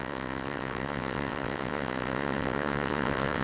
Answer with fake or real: fake